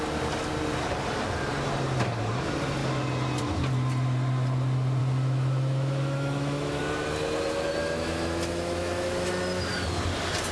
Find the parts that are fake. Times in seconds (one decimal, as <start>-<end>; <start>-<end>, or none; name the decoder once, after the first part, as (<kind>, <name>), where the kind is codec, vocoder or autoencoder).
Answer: 5.0-6.8 (autoencoder, DAC-VAE); 7.8-9.3